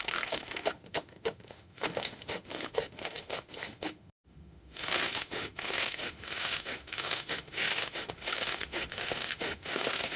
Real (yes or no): no